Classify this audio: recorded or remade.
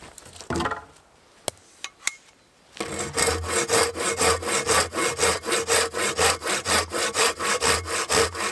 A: recorded